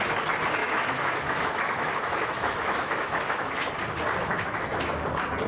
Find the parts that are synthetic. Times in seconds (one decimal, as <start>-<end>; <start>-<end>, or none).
0.6-3.7; 4.2-4.9